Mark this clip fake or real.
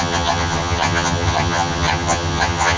fake